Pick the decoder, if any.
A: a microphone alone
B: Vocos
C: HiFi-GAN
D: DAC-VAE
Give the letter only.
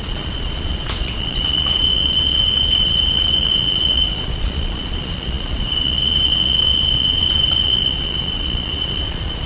B